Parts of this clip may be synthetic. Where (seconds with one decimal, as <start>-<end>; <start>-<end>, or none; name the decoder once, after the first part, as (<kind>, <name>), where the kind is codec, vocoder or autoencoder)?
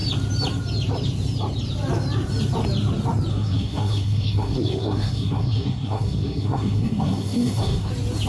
3.3-7.9 (codec, SNAC)